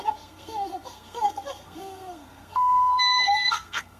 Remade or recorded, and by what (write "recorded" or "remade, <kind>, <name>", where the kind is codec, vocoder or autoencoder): remade, codec, SNAC